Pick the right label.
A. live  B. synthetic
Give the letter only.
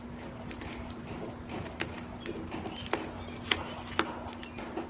A